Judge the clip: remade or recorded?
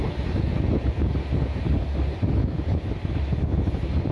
recorded